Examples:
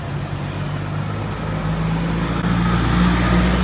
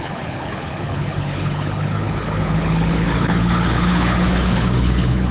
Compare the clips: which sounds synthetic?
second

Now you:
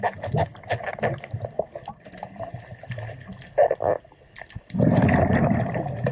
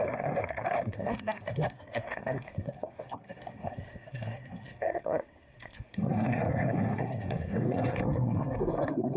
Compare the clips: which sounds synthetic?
second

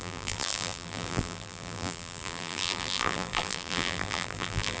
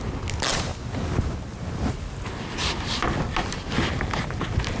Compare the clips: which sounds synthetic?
first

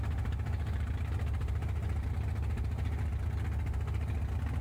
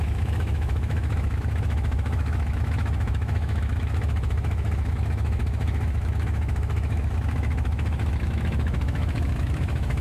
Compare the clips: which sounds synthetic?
second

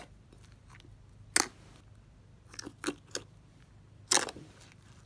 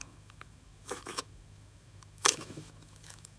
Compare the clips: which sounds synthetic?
second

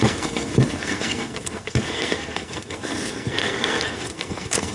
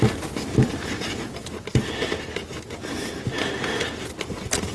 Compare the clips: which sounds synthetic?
first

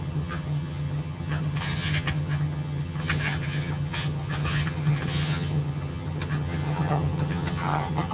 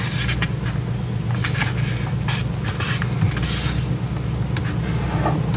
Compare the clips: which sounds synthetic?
first